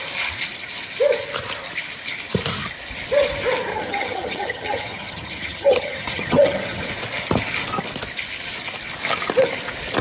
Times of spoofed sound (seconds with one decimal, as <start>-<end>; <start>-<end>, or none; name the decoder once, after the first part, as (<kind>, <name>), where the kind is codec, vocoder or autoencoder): 3.7-6.9 (vocoder, HiFi-GAN)